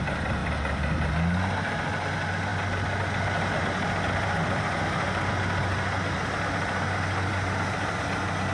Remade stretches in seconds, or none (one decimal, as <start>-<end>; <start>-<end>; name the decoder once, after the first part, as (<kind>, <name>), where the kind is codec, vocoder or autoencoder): 0.4-1.1 (vocoder, BigVGAN v2)

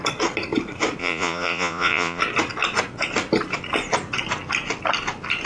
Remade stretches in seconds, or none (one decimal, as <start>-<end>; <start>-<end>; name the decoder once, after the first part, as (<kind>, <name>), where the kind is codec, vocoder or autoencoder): 1.0-2.2 (vocoder, Vocos)

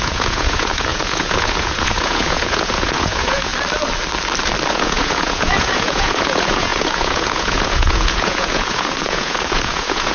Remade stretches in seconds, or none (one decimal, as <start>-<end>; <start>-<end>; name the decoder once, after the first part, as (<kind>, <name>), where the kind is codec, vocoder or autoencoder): 0.0-3.5 (vocoder, Vocos); 4.7-10.1

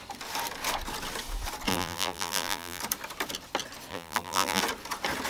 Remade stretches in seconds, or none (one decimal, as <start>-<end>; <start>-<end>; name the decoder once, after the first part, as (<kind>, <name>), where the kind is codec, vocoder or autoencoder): 1.7-2.8 (vocoder, BigVGAN v2); 3.9-4.6

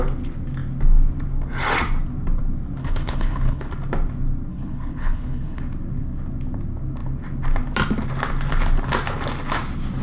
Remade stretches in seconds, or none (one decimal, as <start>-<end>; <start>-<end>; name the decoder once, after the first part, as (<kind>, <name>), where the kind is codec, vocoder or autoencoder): 2.8-3.7 (codec, HILCodec); 4.5-5.6